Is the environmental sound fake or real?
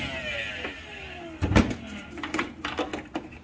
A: real